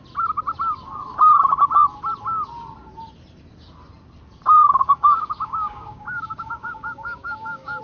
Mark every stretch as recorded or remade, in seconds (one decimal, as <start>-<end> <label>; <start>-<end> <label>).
0.0-4.6 recorded; 4.6-7.8 remade